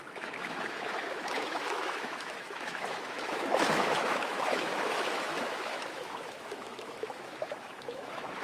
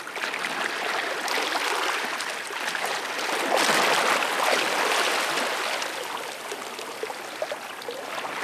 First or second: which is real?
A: second